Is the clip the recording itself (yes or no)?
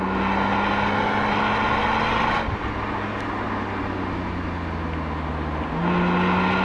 yes